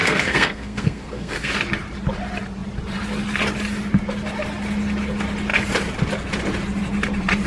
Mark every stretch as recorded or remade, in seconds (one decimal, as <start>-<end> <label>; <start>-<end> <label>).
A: 0.0-1.5 remade; 1.5-7.5 recorded